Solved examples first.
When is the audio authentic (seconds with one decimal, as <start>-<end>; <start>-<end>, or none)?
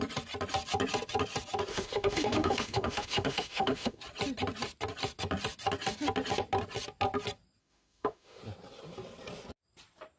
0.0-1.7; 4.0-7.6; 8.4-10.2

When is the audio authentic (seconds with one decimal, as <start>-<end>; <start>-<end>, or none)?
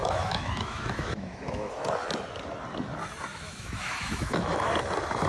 1.7-3.3; 4.7-5.3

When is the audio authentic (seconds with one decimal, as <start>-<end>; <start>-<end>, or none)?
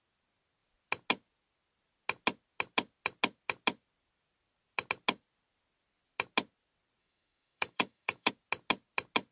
0.0-7.0; 8.3-9.3